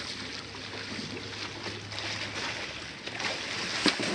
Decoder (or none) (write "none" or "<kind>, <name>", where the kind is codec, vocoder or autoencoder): none